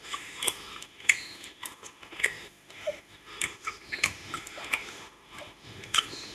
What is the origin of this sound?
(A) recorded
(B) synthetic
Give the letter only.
B